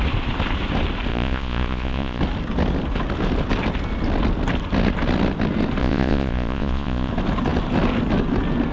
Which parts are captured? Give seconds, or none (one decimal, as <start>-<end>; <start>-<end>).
0.0-1.1; 2.2-5.8; 7.1-8.7